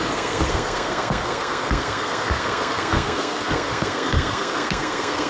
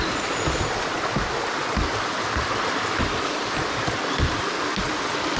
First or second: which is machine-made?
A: first